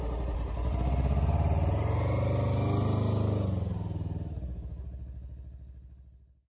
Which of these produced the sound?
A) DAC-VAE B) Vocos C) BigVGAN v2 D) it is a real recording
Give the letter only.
D